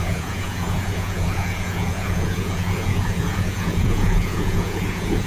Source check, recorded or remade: remade